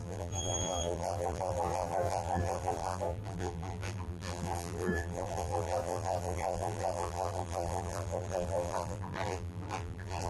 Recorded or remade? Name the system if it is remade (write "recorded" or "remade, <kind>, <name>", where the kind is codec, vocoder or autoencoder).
remade, vocoder, BigVGAN v2